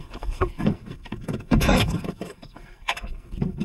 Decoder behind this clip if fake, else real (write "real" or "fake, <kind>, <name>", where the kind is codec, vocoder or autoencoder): fake, codec, SNAC